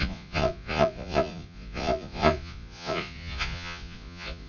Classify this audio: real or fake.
fake